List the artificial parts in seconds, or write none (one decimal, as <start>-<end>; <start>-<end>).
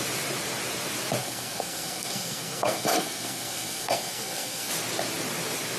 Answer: 1.2-4.7